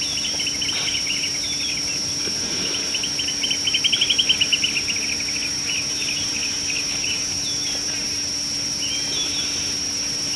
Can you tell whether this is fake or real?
real